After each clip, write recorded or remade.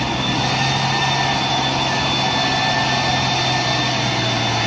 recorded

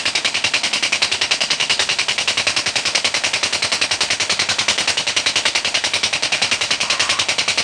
remade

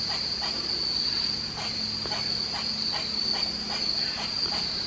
recorded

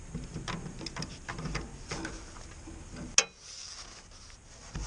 recorded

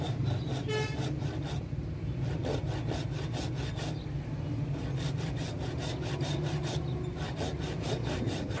recorded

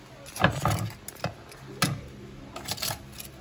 recorded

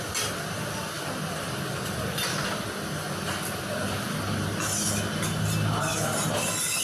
recorded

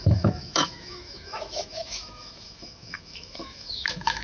remade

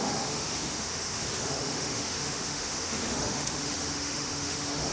remade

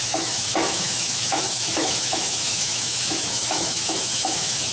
remade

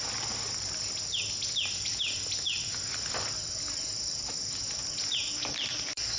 recorded